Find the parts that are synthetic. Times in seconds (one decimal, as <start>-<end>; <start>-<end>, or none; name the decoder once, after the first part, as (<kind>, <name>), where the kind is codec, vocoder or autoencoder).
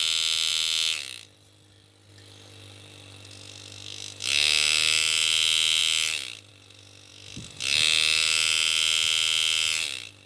none